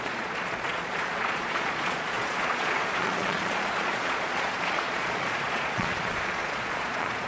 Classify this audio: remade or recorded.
remade